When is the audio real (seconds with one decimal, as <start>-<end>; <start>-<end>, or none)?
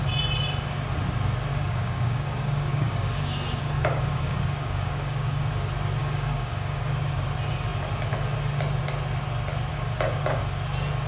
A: 0.0-1.5; 5.5-6.0; 7.0-9.7; 10.4-11.1